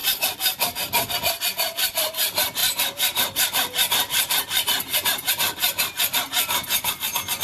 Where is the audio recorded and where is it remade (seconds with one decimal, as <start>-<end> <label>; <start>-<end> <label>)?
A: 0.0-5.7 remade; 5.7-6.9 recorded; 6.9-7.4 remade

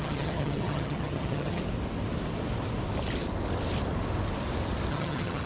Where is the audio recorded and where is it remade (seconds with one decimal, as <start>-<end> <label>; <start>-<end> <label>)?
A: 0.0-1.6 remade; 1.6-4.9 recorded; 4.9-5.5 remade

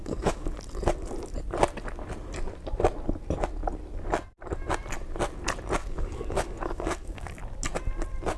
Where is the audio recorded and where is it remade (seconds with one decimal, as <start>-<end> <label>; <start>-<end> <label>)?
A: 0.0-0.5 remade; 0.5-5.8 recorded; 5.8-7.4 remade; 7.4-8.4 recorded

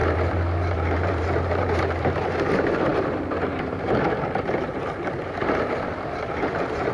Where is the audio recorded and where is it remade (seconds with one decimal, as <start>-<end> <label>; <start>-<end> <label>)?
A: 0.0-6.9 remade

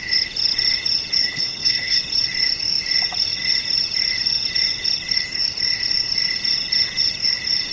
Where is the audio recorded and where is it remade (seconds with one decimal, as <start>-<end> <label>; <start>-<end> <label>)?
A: 0.0-1.2 recorded; 1.2-2.0 remade; 2.0-7.7 recorded

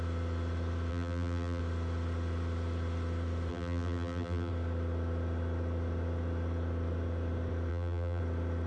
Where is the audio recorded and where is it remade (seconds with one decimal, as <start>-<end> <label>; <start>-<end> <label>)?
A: 0.0-0.9 recorded; 0.9-1.6 remade; 1.6-3.5 recorded; 3.5-4.5 remade; 4.5-7.7 recorded; 7.7-8.2 remade; 8.2-8.7 recorded

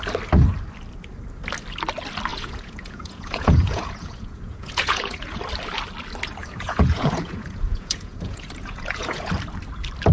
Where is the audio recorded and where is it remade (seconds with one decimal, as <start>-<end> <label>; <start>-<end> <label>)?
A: 0.0-2.3 recorded; 2.3-5.4 remade; 5.4-6.4 recorded; 6.4-9.3 remade; 9.3-10.1 recorded

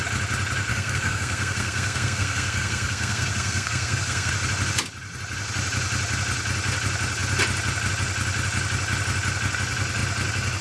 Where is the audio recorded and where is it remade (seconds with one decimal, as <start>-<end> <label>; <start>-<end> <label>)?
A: 0.0-0.7 recorded; 0.7-4.3 remade; 4.3-10.6 recorded